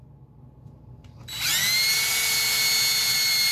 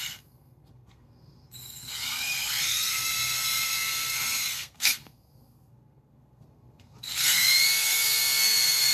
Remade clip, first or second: second